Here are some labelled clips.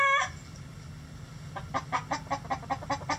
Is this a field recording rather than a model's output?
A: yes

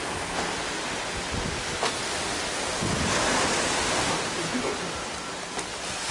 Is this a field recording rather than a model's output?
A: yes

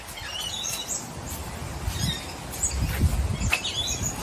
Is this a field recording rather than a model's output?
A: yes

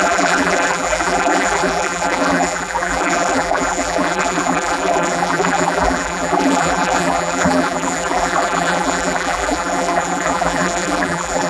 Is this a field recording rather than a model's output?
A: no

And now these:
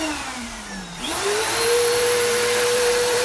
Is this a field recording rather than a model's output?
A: no